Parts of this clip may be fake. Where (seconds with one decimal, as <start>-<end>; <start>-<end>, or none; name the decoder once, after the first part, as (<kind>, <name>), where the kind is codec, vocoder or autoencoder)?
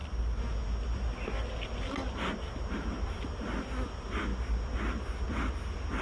none